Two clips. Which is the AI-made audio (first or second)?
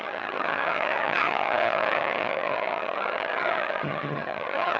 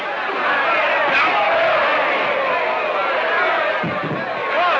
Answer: first